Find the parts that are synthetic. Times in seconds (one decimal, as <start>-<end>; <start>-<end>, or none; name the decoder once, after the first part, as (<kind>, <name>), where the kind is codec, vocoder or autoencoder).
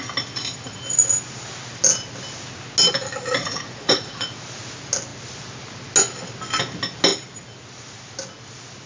3.4-4.4 (vocoder, Vocos)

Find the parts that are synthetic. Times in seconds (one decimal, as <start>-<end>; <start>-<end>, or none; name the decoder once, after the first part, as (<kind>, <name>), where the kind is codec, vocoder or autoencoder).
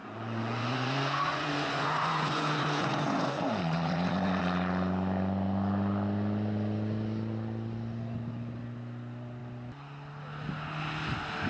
0.0-4.4 (vocoder, Vocos)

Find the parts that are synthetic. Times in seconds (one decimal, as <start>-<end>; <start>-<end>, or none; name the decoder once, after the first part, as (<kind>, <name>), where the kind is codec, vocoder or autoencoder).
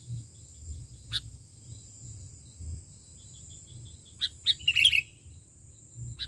none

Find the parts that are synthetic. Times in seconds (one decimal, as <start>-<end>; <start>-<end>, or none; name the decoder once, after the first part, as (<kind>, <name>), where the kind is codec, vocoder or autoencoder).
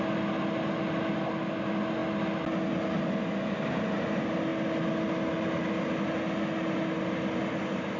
none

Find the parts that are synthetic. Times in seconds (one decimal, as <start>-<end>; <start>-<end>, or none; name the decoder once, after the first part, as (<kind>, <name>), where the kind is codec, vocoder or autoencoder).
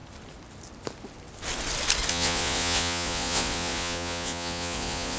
2.1-5.2 (vocoder, Vocos)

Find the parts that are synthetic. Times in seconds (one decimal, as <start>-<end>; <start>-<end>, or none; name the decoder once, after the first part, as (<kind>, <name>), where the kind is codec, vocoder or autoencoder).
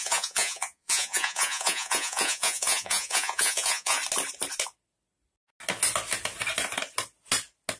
0.0-4.0 (vocoder, Vocos)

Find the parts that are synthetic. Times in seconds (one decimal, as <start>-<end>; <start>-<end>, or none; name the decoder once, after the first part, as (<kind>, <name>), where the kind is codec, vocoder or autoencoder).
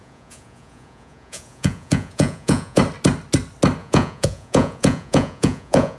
0.0-2.8 (vocoder, Vocos); 3.8-6.0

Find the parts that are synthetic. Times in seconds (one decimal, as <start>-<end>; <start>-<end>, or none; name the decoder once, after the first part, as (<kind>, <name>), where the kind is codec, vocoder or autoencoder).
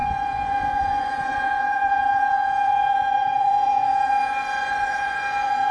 0.0-5.7 (vocoder, Vocos)